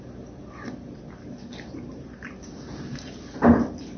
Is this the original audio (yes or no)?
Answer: yes